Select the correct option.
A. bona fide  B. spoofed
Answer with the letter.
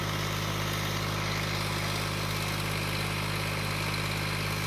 A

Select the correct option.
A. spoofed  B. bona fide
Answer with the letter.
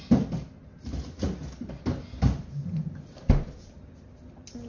B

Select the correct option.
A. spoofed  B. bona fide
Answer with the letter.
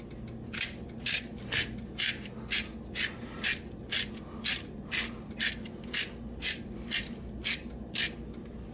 B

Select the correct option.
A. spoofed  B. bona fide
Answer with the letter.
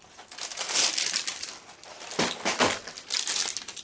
B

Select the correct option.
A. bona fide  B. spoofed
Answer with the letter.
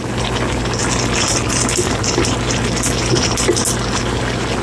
A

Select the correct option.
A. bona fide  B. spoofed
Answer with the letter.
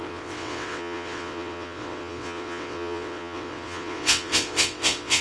B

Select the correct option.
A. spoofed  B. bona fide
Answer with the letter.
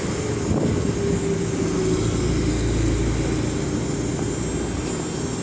B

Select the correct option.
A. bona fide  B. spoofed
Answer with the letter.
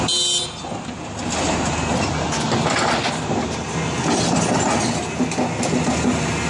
A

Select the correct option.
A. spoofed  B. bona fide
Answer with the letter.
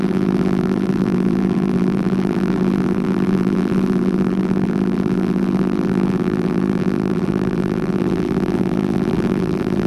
A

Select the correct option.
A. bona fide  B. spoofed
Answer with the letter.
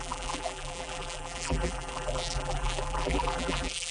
B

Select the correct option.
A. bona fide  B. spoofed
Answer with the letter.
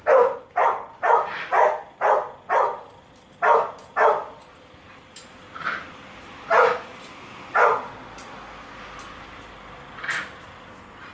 A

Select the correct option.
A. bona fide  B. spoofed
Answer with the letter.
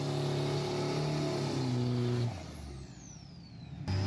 A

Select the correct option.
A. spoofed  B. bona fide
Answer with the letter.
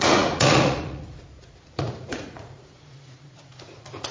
A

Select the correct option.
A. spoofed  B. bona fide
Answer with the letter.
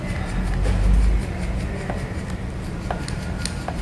B